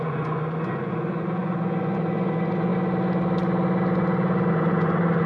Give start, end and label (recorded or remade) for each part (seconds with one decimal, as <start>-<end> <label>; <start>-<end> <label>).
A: 0.0-2.7 remade; 2.7-4.5 recorded; 4.5-5.3 remade